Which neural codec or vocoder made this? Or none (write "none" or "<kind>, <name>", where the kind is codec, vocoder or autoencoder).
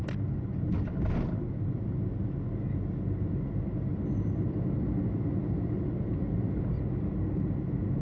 none